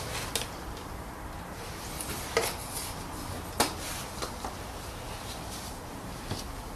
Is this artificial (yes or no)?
no